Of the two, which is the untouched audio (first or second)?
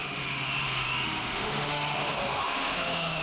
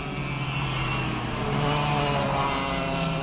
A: second